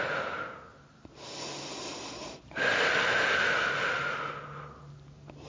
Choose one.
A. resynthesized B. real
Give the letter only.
B